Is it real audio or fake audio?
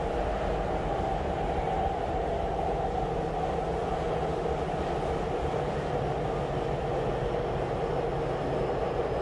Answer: real